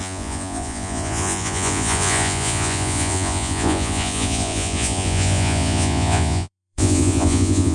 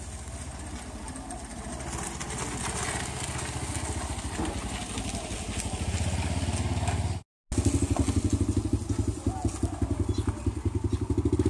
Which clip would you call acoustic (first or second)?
second